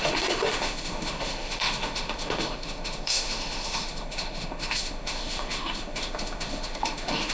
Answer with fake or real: fake